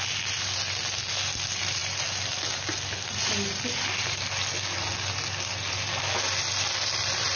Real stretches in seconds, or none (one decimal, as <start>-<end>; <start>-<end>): 0.0-7.4